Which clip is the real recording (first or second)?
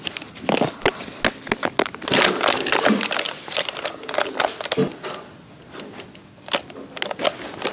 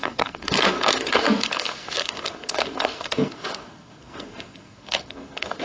first